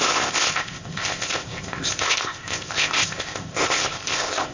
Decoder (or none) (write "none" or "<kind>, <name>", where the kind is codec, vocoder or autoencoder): codec, ZipCodec